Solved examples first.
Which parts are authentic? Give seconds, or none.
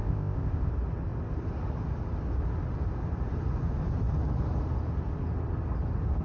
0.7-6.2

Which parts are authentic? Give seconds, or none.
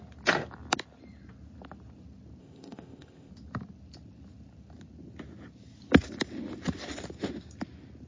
0.0-2.4; 3.3-8.1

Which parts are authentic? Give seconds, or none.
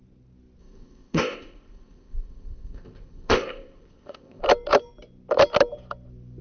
0.0-0.6; 4.4-6.4